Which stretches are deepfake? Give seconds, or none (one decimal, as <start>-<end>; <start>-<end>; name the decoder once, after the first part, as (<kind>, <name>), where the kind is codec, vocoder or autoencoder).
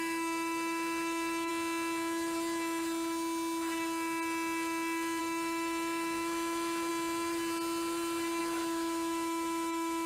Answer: 0.0-1.5 (autoencoder, DAC-VAE); 5.2-6.9; 8.4-10.1